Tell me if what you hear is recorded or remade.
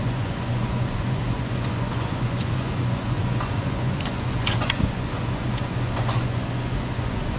remade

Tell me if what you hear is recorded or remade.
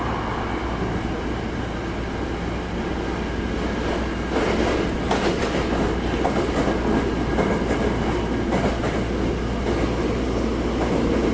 recorded